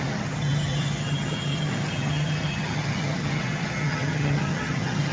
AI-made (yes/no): yes